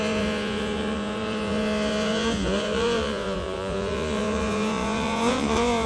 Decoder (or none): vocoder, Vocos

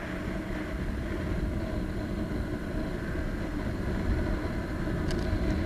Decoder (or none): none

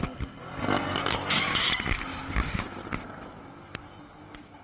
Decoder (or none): none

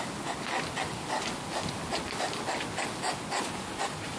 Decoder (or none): none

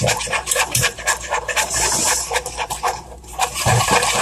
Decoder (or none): vocoder, BigVGAN v2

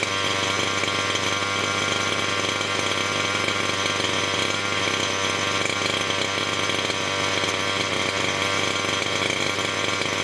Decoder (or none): none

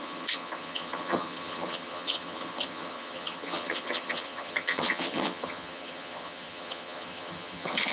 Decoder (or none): vocoder, HiFi-GAN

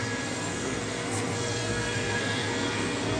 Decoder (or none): codec, SNAC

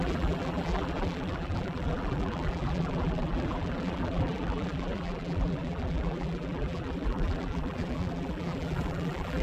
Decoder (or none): vocoder, BigVGAN v2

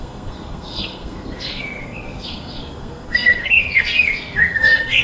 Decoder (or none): codec, SNAC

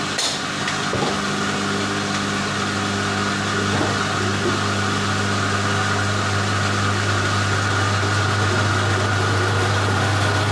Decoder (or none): none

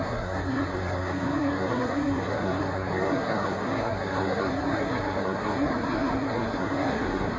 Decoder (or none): codec, SNAC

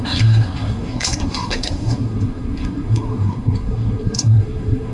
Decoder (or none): codec, SNAC